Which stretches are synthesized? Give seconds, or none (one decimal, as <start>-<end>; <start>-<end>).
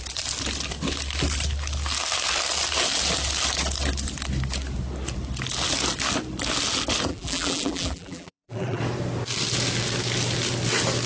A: 7.1-8.8